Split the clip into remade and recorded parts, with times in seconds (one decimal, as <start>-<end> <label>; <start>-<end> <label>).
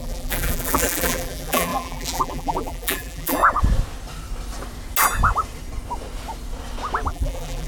0.0-3.4 remade; 3.4-7.1 recorded; 7.1-7.7 remade